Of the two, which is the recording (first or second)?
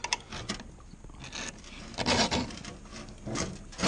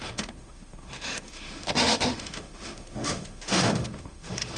first